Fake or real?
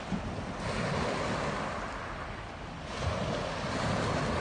real